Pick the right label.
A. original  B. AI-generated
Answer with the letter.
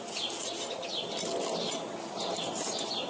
A